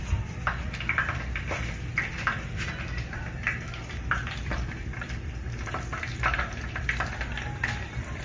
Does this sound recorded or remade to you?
remade